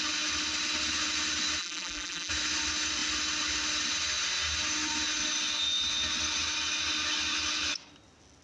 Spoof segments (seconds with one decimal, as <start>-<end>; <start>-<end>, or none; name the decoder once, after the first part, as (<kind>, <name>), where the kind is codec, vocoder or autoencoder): 1.6-2.3 (vocoder, BigVGAN v2)